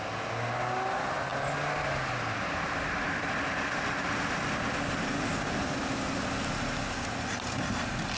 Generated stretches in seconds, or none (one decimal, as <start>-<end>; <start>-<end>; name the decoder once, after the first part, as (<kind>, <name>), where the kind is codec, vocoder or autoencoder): none